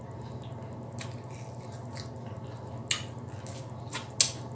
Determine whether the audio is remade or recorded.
recorded